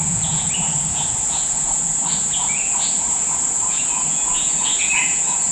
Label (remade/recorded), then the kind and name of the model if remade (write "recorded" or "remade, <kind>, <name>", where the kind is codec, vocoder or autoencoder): remade, vocoder, Vocos